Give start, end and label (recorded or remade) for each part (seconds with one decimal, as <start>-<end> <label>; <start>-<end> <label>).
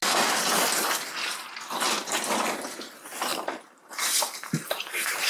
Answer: 0.0-3.3 recorded; 3.3-5.3 remade